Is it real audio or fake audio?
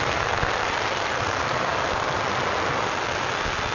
real